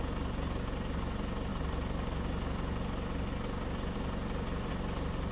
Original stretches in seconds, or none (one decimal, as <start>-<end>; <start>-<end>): 0.0-5.3